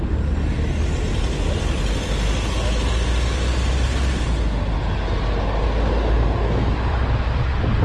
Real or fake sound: real